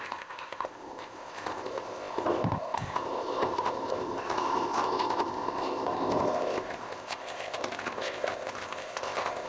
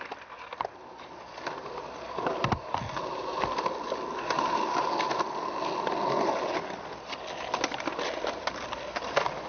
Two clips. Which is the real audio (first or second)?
second